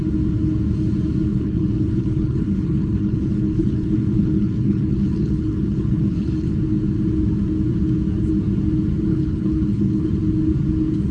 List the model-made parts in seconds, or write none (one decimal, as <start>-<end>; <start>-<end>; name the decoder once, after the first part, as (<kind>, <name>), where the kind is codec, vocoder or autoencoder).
1.3-6.5 (codec, HILCodec); 9.1-10.1